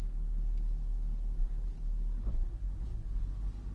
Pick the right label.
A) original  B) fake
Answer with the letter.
A